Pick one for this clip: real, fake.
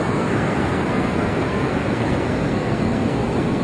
fake